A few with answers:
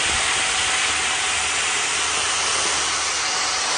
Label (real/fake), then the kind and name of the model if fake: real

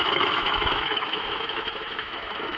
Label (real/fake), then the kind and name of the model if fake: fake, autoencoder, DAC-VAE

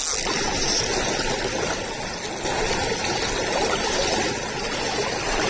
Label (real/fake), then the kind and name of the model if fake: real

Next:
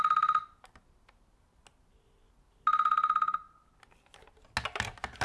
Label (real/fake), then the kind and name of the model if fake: real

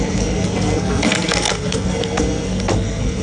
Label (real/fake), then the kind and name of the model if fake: fake, codec, SNAC